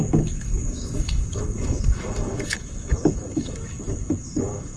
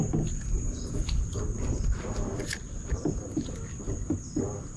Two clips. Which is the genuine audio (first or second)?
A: second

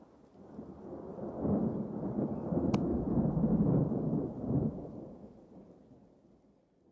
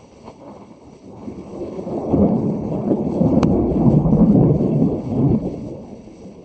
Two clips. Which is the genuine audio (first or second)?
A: first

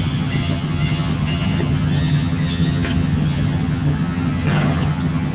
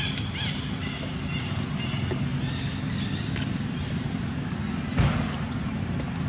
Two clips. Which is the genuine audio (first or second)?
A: second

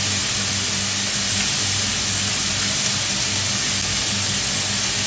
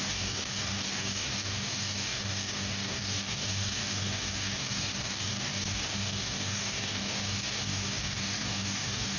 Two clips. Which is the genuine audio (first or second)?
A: first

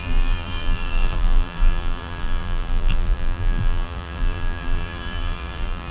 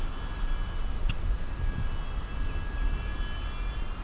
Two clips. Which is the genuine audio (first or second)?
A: second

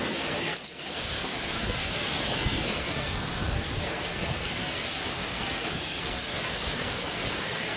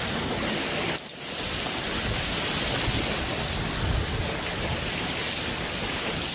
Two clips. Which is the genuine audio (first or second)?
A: second